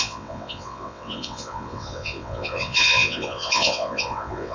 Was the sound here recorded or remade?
remade